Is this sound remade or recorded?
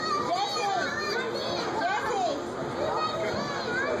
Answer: recorded